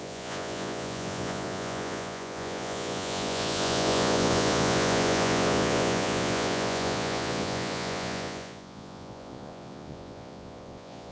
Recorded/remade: remade